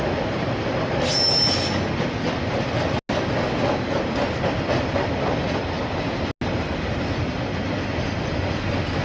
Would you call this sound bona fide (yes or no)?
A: yes